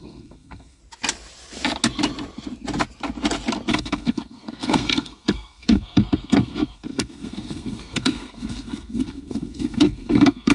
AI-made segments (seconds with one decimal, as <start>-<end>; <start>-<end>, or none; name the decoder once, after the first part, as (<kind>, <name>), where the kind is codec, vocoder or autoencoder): 0.0-0.8 (codec, SNAC); 3.7-10.5